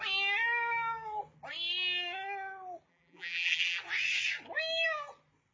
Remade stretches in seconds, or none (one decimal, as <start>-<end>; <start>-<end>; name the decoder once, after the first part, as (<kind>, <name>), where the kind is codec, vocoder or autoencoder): 2.9-3.8 (vocoder, BigVGAN v2)